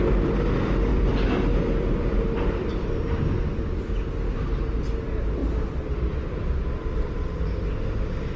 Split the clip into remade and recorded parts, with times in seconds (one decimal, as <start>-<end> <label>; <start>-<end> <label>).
0.0-0.9 recorded; 0.9-3.4 remade; 3.4-5.4 recorded; 5.4-7.4 remade; 7.4-8.4 recorded